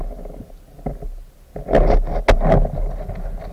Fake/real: real